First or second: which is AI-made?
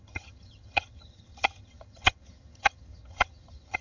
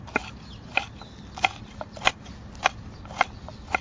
first